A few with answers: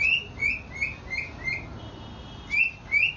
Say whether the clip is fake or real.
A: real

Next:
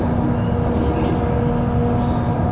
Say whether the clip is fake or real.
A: real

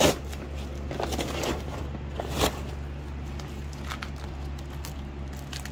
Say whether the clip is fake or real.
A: real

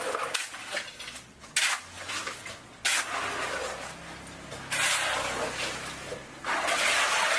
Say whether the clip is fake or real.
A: real